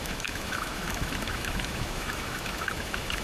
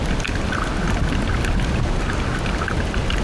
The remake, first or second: first